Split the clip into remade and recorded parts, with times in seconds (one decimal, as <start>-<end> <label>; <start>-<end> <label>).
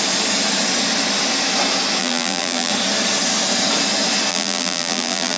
0.0-2.0 recorded; 2.0-2.7 remade; 2.7-4.3 recorded; 4.3-5.4 remade